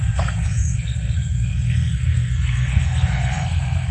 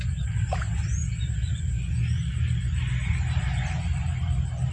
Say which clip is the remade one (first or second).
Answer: first